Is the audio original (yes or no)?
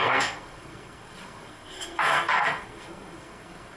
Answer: no